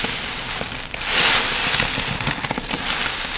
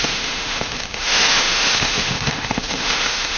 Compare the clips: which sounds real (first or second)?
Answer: first